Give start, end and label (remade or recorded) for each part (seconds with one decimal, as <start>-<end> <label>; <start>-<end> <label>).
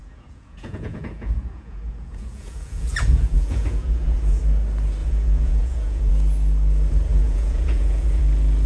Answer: 0.0-4.4 remade; 4.4-5.0 recorded; 5.0-6.1 remade; 6.1-7.1 recorded; 7.1-8.2 remade; 8.2-8.7 recorded